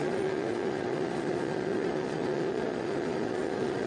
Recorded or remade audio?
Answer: remade